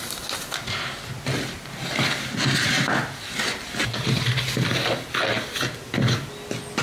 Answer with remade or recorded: recorded